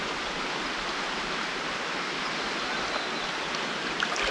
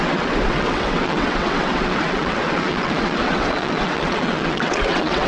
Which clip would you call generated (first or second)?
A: second